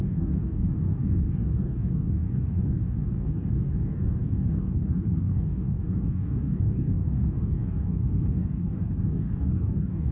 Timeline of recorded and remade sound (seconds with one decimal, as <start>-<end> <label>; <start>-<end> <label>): 0.0-10.1 remade